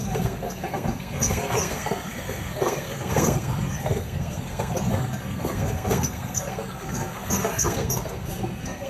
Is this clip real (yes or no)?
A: no